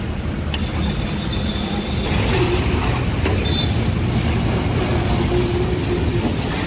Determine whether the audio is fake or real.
real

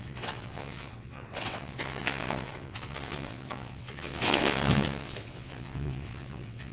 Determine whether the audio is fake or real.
fake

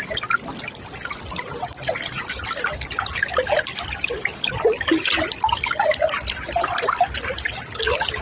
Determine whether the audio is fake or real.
real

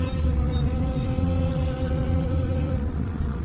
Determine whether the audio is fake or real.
fake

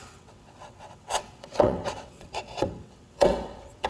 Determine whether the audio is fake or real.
fake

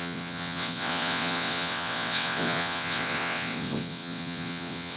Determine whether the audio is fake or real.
fake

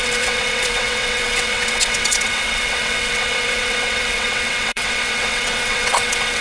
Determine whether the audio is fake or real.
fake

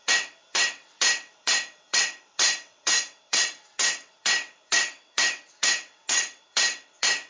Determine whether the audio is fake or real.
fake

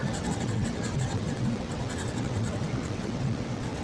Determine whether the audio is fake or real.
fake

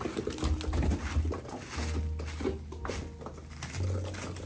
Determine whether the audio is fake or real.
real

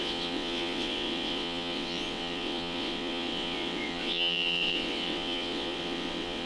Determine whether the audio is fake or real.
fake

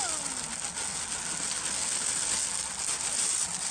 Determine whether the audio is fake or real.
real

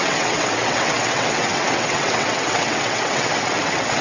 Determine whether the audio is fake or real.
fake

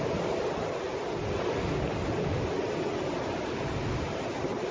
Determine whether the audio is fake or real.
real